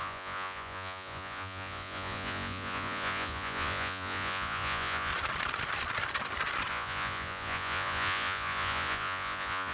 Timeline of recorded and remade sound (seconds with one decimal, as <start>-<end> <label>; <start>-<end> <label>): 0.0-5.1 remade; 5.1-6.7 recorded; 6.7-9.7 remade